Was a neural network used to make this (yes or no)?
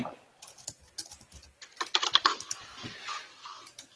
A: no